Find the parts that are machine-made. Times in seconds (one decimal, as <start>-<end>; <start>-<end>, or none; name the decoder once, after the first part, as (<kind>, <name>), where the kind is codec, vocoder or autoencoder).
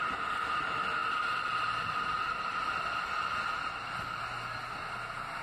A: 1.0-4.2 (vocoder, BigVGAN v2)